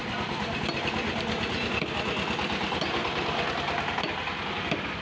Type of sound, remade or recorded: recorded